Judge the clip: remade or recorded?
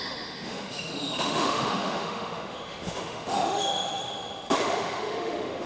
remade